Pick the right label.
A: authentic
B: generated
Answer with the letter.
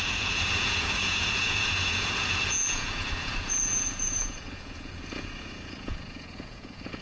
B